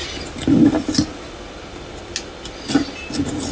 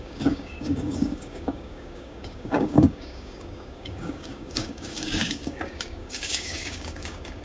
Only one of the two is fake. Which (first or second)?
second